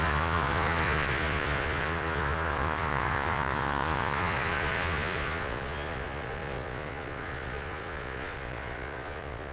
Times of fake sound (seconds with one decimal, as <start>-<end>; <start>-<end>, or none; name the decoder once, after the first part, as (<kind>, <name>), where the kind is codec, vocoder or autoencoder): 0.0-9.5 (vocoder, Vocos)